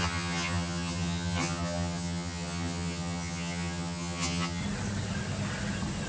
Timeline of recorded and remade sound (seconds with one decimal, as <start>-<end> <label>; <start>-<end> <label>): 0.0-4.6 remade; 4.6-6.1 recorded